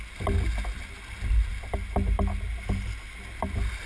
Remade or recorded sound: recorded